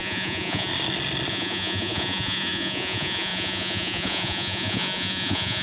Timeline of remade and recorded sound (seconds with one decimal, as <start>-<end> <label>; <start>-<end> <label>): 0.0-0.7 remade; 0.7-1.3 recorded; 1.3-5.6 remade